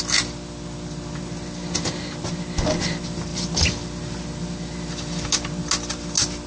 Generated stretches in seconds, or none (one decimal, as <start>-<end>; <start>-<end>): none